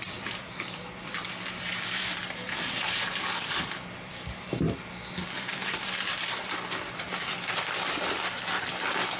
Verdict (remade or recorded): remade